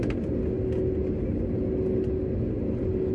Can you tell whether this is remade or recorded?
recorded